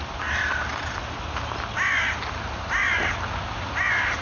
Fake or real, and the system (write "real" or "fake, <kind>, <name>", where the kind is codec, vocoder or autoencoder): real